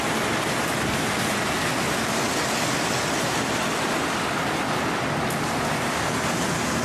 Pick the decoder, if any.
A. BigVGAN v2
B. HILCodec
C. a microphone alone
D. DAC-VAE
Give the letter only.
C